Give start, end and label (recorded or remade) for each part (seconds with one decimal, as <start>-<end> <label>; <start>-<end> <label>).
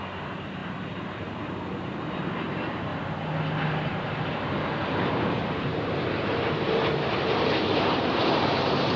0.0-2.9 remade; 2.9-5.0 recorded; 5.0-9.0 remade